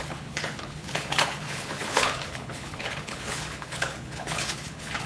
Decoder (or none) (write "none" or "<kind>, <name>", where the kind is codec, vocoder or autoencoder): codec, HILCodec